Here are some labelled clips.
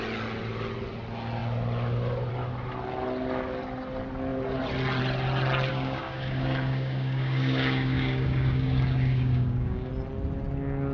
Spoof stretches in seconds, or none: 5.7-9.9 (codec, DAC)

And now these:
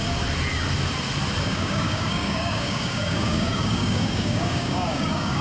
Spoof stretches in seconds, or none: 1.4-5.4 (codec, DAC)

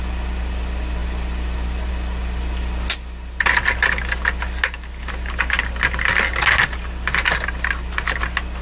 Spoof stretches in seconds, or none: none